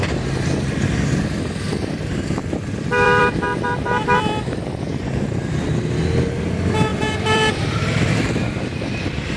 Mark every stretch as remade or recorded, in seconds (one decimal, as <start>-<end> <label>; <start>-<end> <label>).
0.0-2.4 recorded; 2.4-5.6 remade; 5.6-6.9 recorded; 6.9-8.4 remade; 8.4-9.4 recorded